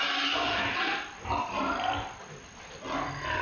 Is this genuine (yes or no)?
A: yes